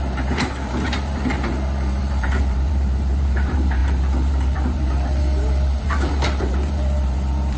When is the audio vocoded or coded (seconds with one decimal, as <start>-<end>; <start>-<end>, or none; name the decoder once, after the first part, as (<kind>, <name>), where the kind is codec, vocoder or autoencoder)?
0.0-7.6 (vocoder, BigVGAN v2)